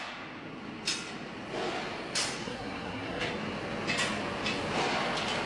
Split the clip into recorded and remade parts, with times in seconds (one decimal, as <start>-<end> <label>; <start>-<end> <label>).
0.0-2.4 recorded; 2.4-3.3 remade; 3.3-5.5 recorded